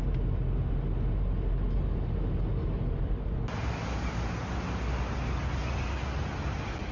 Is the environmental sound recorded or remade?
recorded